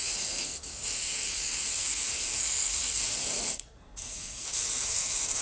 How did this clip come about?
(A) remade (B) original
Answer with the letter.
A